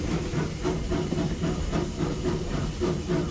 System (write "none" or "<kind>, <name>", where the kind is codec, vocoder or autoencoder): none